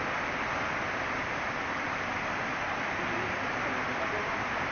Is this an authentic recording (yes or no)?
yes